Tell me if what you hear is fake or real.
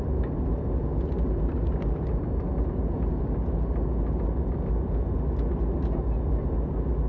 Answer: real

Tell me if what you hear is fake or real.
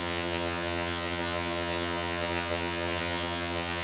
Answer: fake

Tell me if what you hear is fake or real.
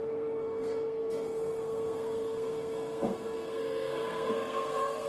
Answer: fake